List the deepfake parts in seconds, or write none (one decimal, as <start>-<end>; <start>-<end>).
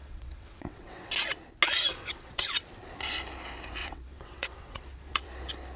0.0-1.1; 1.9-2.5; 3.8-5.3